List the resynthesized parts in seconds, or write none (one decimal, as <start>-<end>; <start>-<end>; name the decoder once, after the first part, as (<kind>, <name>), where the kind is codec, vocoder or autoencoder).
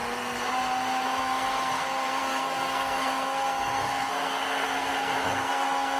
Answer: 1.2-6.0 (codec, SNAC)